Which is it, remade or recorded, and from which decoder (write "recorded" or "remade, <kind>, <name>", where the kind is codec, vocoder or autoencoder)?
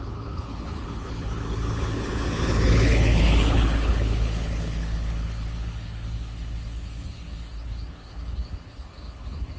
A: remade, codec, HILCodec